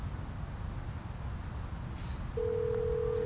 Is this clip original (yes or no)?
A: yes